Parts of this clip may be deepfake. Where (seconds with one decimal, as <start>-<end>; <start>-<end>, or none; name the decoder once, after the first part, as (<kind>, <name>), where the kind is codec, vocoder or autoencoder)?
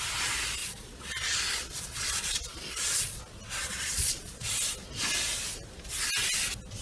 0.6-3.2 (vocoder, Vocos); 3.6-4.5